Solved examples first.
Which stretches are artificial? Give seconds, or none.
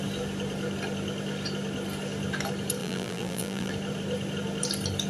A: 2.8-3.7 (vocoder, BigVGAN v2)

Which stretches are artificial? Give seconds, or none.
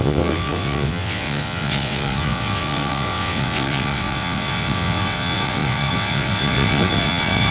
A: 0.0-7.5 (vocoder, WaveNeXt)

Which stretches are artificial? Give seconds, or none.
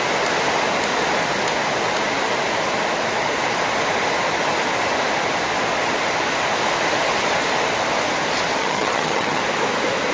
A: 8.6-9.4 (vocoder, HiFi-GAN)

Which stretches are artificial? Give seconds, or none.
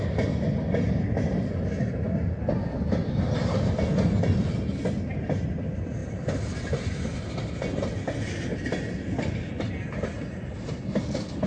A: none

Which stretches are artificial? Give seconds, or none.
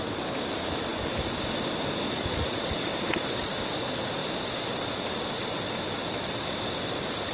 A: none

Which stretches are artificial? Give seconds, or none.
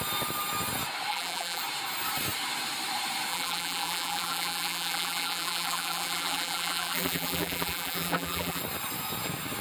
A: 1.1-1.6 (vocoder, BigVGAN v2); 3.3-8.6